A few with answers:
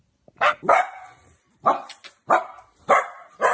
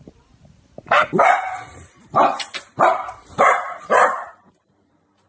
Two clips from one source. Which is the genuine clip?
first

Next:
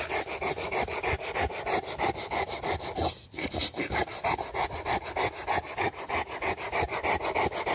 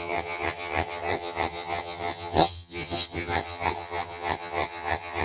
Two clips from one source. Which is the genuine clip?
first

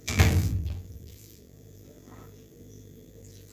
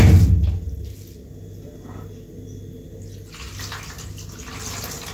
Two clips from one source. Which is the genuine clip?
second